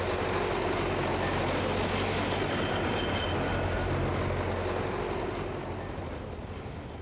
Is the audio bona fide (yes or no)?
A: yes